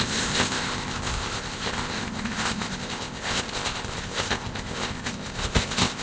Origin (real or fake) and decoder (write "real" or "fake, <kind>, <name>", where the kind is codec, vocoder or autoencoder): fake, codec, ZipCodec